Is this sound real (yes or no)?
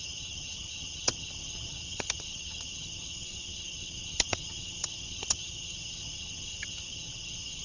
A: no